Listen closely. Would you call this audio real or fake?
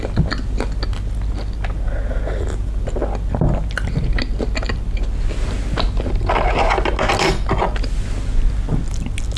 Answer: real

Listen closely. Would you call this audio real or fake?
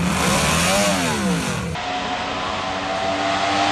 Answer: real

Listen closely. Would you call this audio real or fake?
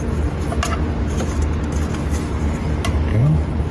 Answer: real